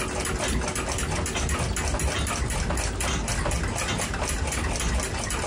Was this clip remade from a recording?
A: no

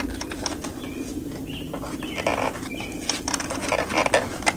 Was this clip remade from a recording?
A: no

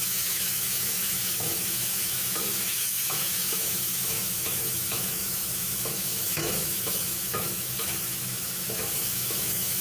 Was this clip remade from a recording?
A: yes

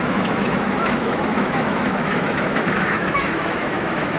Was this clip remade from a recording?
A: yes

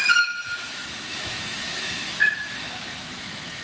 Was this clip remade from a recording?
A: yes